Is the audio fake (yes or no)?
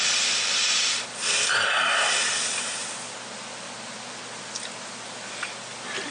no